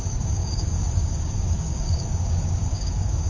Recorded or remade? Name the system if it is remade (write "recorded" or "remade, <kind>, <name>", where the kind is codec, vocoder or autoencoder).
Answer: remade, codec, DAC